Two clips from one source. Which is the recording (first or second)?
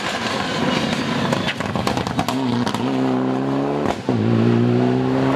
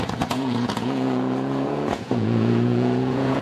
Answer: first